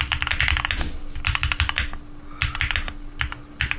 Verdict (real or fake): real